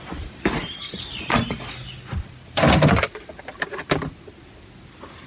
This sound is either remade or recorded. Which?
recorded